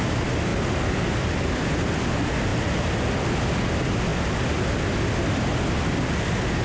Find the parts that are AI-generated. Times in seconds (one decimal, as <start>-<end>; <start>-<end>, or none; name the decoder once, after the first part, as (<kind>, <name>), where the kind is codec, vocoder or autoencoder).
none